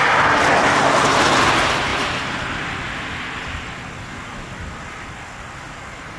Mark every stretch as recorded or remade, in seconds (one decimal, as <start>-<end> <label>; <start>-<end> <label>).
0.0-6.2 recorded